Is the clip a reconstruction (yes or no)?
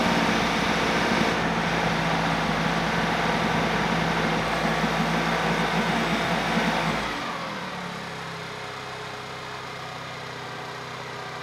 no